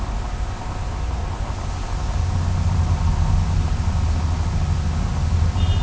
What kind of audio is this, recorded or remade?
recorded